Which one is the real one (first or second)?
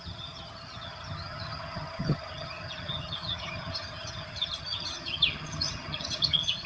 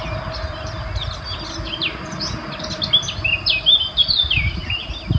second